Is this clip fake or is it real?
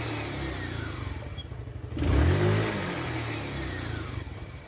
real